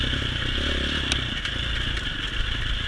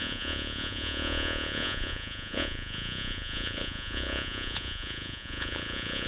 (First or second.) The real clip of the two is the first